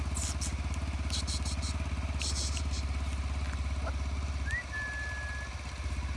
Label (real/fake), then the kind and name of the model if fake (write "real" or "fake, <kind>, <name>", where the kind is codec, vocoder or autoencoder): real